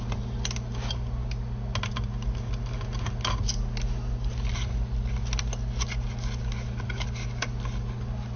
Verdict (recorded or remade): recorded